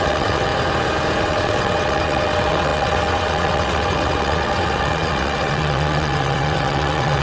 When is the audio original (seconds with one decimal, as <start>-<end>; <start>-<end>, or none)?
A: 0.5-1.2